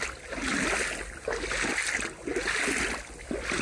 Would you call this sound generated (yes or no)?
no